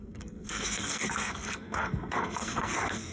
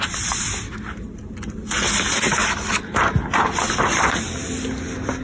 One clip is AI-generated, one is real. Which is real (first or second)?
second